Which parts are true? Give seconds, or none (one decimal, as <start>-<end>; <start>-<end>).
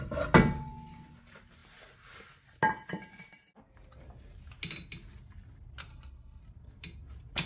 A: 0.0-5.9; 6.4-7.5